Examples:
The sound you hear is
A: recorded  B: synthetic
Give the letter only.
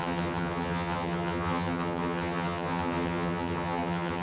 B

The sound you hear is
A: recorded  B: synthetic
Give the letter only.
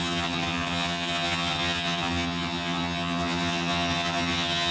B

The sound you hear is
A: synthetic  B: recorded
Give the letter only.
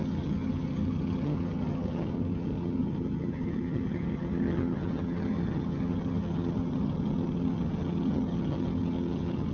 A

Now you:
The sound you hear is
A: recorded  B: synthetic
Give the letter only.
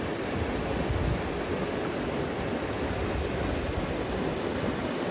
A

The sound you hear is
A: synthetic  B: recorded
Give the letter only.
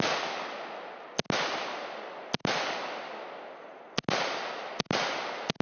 B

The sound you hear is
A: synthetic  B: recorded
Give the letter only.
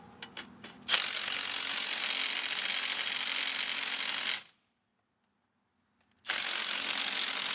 B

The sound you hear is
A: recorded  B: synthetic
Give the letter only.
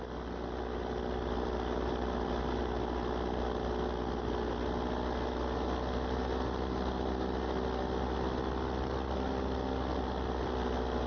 A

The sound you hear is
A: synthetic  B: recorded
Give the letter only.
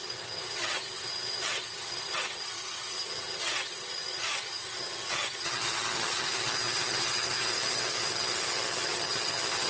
A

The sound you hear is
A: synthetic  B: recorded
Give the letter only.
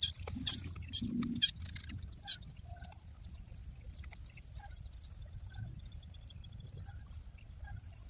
B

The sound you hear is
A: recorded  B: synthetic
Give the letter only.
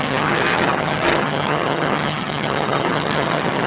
B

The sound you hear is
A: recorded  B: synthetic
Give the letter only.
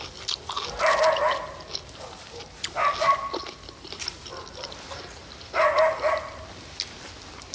A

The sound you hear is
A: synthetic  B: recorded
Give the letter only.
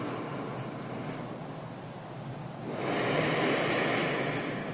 B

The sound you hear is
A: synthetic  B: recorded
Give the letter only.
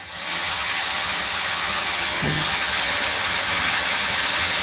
A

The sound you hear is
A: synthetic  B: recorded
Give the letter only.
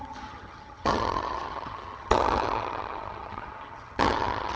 A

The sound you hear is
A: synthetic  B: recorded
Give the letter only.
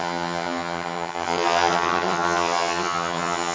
A